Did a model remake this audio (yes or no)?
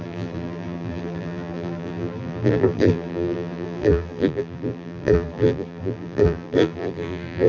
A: yes